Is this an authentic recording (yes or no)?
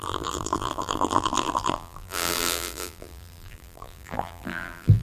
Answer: no